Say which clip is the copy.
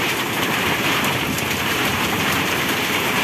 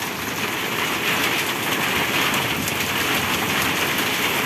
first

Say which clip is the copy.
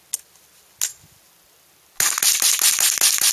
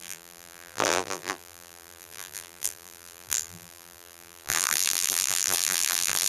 second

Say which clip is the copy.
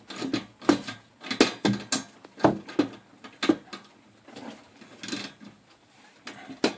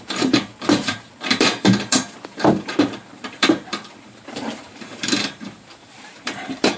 second